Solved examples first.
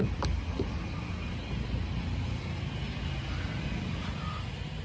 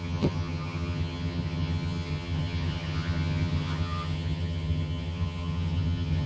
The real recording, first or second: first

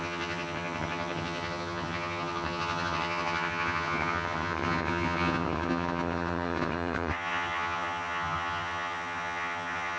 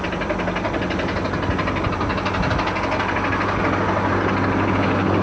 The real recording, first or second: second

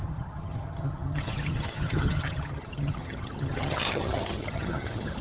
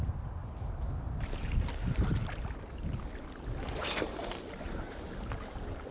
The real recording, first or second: second